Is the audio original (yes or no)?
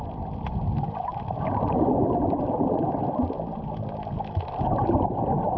yes